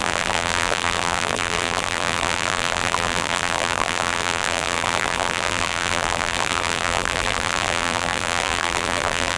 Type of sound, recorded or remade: remade